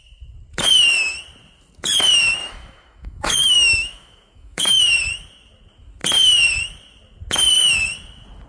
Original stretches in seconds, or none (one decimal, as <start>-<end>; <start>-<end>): 0.0-2.4; 4.8-8.5